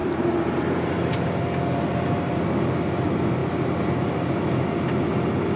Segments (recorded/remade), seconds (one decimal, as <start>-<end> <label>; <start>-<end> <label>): 0.0-1.4 remade; 1.4-5.6 recorded